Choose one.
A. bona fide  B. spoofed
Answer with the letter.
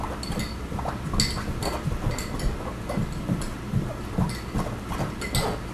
A